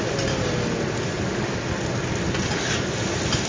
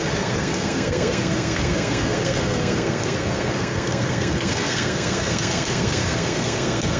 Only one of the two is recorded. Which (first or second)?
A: first